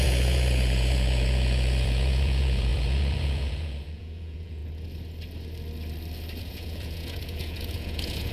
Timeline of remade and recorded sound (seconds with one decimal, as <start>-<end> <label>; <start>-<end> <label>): 0.0-4.6 remade; 4.6-6.4 recorded; 6.4-8.3 remade